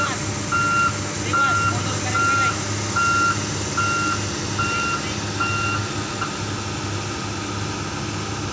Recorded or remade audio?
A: recorded